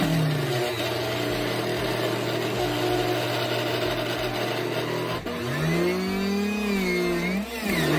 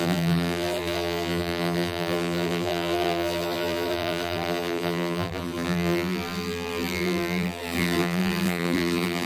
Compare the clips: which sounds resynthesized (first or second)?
second